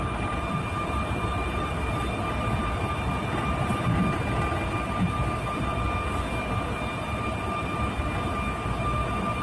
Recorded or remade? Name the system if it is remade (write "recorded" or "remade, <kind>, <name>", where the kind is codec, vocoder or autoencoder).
recorded